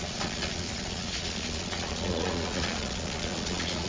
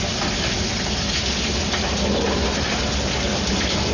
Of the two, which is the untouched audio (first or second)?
second